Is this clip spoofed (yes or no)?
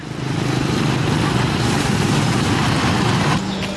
no